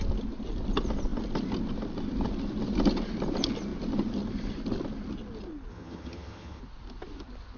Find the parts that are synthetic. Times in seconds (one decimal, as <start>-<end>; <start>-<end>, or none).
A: 5.7-6.6